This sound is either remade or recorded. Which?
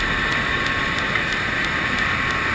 recorded